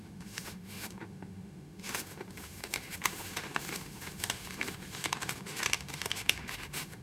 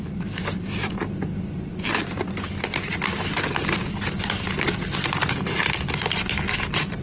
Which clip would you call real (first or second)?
second